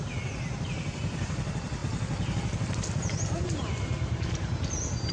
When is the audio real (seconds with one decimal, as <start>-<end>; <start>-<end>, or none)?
1.8-5.1